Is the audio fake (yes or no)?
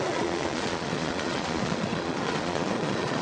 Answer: yes